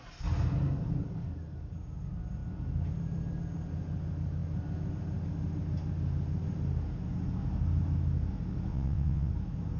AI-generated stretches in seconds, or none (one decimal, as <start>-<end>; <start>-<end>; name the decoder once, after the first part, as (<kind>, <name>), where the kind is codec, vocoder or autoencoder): 8.7-9.3 (vocoder, WaveNeXt)